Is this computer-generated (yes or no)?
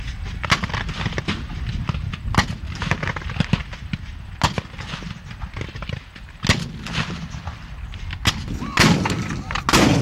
no